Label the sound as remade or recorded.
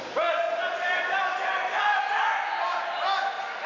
recorded